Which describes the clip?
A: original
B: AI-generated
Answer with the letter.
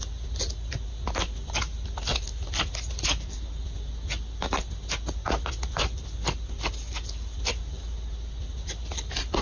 A